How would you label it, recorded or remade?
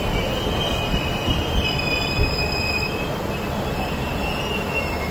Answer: remade